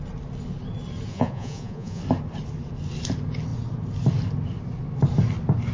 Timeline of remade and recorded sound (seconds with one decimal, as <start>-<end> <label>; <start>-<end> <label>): 0.0-1.1 recorded; 1.1-2.0 remade; 2.0-5.7 recorded